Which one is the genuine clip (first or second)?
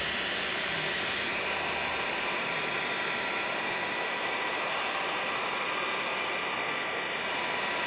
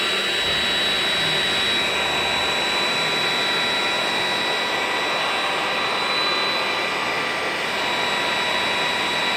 second